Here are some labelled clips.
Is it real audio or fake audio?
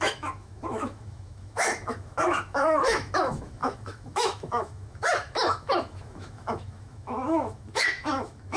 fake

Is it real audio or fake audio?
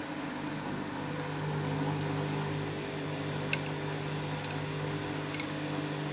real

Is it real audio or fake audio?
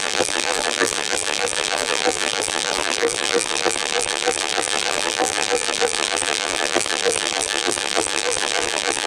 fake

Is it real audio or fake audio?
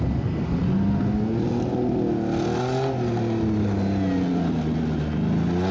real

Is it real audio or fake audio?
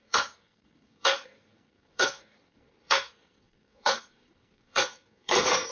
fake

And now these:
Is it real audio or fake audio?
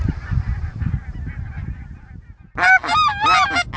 real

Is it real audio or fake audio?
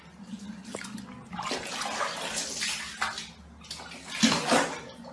real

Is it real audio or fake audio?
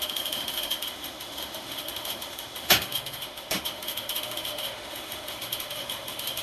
fake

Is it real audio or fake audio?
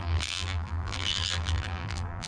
fake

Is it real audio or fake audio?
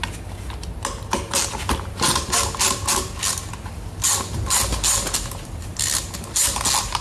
real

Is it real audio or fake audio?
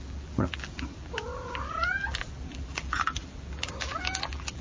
fake